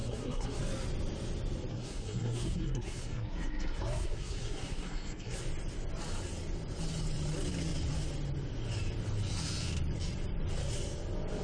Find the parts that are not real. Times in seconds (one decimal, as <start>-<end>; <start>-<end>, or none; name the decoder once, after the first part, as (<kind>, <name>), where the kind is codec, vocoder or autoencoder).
0.0-0.6 (codec, SNAC); 1.7-5.4